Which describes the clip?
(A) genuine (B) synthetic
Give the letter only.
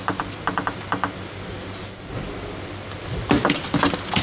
A